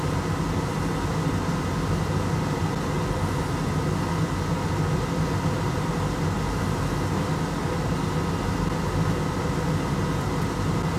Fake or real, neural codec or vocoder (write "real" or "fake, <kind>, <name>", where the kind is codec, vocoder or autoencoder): real